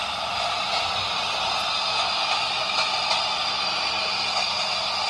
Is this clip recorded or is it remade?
recorded